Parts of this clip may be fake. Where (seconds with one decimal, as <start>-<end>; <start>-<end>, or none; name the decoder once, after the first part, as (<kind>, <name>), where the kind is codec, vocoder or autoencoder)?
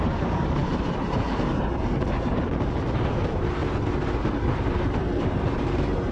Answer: 0.0-3.6 (vocoder, BigVGAN v2); 5.2-6.1